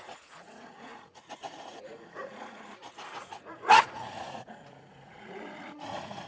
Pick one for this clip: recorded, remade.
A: remade